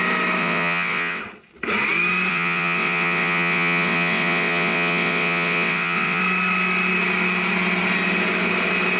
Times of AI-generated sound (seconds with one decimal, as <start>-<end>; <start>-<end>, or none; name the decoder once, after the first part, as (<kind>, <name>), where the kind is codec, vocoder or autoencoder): 0.4-1.2 (vocoder, WaveNeXt); 2.3-6.2